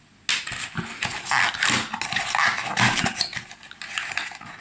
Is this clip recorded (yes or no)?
yes